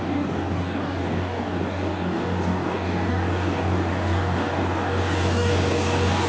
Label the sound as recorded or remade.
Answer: remade